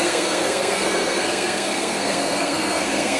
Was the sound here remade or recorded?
remade